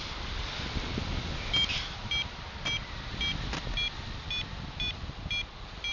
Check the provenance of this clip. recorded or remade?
recorded